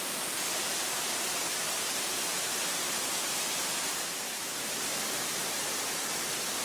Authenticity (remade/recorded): remade